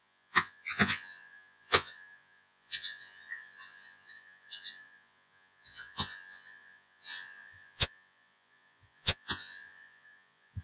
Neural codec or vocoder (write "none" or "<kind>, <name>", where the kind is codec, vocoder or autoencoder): vocoder, Vocos